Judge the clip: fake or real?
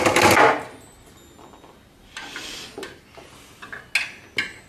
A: real